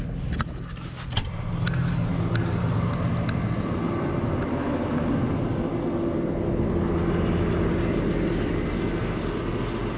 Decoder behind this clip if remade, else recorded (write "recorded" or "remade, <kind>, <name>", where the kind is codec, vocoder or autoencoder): recorded